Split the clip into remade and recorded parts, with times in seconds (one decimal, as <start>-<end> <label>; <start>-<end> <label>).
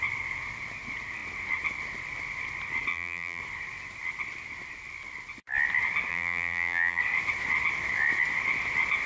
0.0-2.9 recorded; 2.9-3.4 remade; 3.4-6.1 recorded; 6.1-7.0 remade; 7.0-9.1 recorded